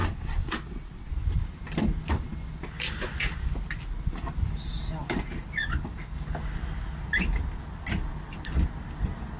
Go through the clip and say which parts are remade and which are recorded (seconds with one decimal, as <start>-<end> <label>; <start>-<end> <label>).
0.0-1.1 remade; 1.1-9.4 recorded